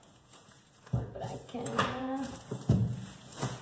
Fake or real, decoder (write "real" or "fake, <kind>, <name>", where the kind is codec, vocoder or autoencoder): fake, vocoder, Vocos